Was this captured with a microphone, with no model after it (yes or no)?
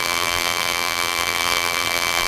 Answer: no